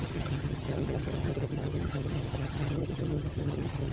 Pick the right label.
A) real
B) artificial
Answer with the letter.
B